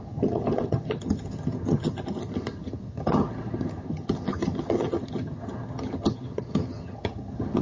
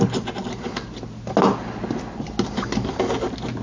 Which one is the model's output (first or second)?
first